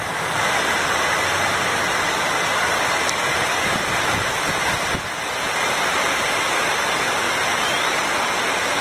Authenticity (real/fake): real